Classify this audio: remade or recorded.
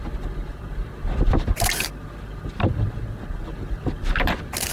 remade